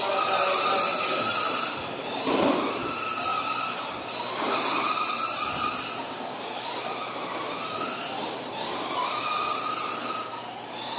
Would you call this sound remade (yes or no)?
no